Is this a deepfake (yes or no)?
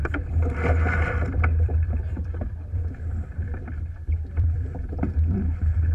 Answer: yes